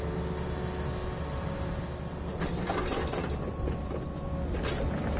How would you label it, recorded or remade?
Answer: recorded